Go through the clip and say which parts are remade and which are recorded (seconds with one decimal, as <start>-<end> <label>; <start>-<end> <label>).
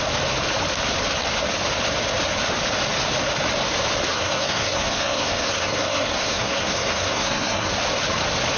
0.0-4.1 recorded; 4.1-7.7 remade; 7.7-8.6 recorded